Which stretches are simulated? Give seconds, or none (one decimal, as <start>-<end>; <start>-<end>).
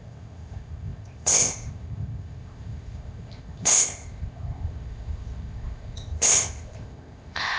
0.0-7.6